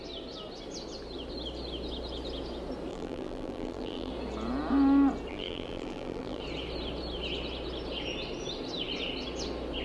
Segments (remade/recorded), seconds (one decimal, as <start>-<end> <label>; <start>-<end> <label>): 0.0-2.9 recorded; 2.9-4.1 remade; 4.1-5.3 recorded; 5.3-6.4 remade; 6.4-9.8 recorded

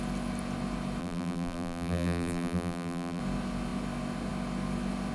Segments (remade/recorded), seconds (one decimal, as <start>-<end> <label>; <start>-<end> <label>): 0.0-1.0 recorded; 1.0-3.2 remade; 3.2-5.1 recorded

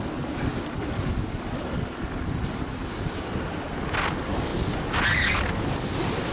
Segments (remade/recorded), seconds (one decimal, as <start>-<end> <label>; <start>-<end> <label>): 0.0-6.3 recorded